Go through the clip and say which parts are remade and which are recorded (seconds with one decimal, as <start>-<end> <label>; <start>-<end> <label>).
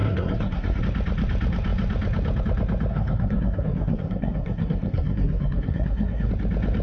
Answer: 0.0-0.8 remade; 0.8-2.9 recorded; 2.9-6.3 remade; 6.3-6.8 recorded